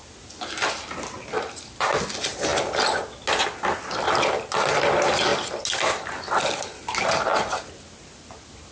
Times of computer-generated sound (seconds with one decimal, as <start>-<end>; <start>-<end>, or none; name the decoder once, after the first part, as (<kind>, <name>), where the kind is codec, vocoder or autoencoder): none